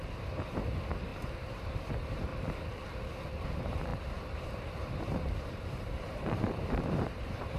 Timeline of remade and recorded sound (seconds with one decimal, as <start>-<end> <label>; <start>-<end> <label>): 0.0-2.3 remade; 2.3-3.5 recorded; 3.5-7.6 remade